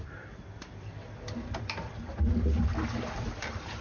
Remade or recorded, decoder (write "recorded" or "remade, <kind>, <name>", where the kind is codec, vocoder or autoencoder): remade, vocoder, BigVGAN v2